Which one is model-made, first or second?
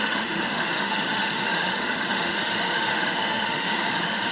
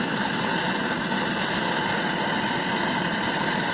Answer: first